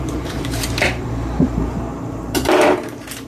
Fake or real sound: fake